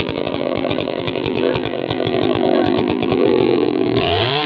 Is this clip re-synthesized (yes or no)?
yes